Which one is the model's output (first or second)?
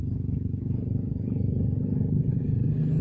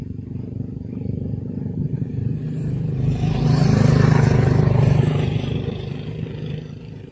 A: second